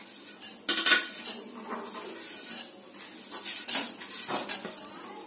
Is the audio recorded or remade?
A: recorded